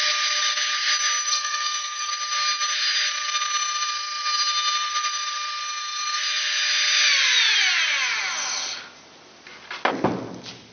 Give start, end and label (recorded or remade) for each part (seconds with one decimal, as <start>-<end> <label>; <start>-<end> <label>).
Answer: 0.0-1.3 recorded; 1.3-2.1 remade; 2.1-10.7 recorded